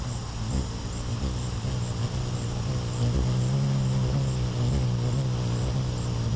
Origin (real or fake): real